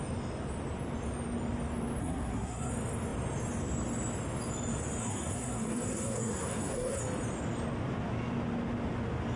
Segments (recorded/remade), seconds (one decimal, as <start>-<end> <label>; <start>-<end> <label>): 0.0-2.0 recorded; 2.0-2.7 remade; 2.7-5.0 recorded; 5.0-7.0 remade; 7.0-9.4 recorded